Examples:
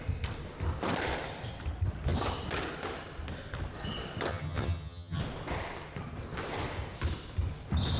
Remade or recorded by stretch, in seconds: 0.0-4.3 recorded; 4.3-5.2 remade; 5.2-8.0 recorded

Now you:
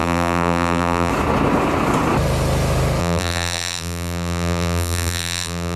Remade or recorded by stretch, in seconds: 0.0-1.1 remade; 1.1-3.0 recorded; 3.0-5.8 remade

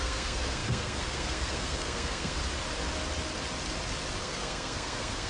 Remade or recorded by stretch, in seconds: 0.0-2.4 remade; 2.4-4.2 recorded; 4.2-5.3 remade

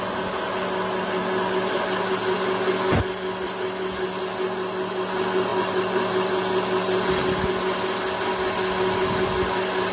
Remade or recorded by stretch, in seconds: 0.0-9.9 recorded

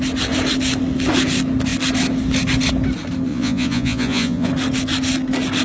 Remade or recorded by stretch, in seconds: 0.0-3.3 recorded; 3.3-4.5 remade; 4.5-5.6 recorded

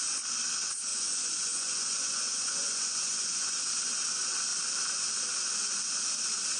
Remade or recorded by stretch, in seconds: 0.0-0.9 recorded; 0.9-3.6 remade; 3.6-6.6 recorded

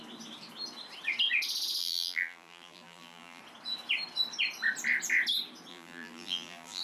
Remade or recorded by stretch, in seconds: 0.0-1.8 recorded; 1.8-3.4 remade; 3.4-5.7 recorded; 5.7-6.8 remade

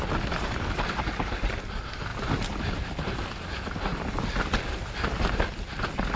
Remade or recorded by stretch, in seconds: 0.0-6.2 recorded